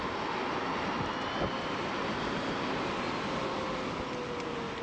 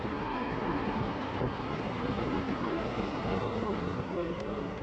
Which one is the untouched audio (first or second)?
first